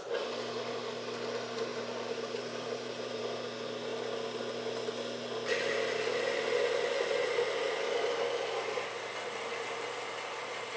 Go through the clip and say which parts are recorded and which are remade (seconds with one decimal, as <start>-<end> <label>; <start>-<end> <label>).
0.0-1.7 recorded; 1.7-3.2 remade; 3.2-10.8 recorded